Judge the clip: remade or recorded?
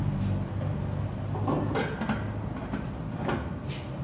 recorded